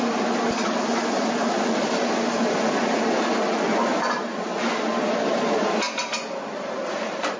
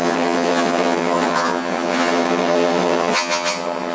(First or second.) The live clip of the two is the first